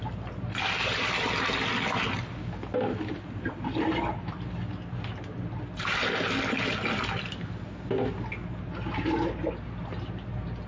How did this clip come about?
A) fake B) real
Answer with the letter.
B